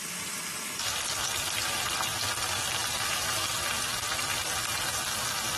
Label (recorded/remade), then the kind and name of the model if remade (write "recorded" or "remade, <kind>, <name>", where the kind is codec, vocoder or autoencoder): recorded